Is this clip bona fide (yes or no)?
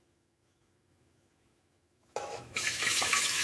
no